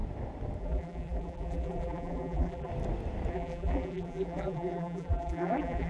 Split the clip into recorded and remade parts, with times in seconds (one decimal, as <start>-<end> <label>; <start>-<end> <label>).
0.0-0.6 recorded; 0.6-2.7 remade; 2.7-3.3 recorded; 3.3-5.9 remade